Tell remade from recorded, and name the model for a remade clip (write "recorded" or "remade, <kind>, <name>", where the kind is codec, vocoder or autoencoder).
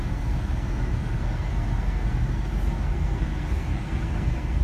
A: remade, codec, SNAC